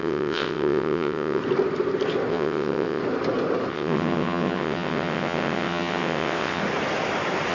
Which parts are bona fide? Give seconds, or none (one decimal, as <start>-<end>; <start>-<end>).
1.4-2.3; 3.0-3.7; 6.6-7.5